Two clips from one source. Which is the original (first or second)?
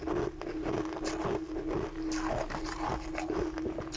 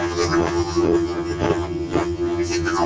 first